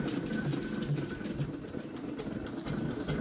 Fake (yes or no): no